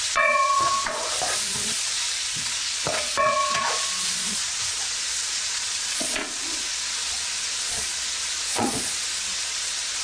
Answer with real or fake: fake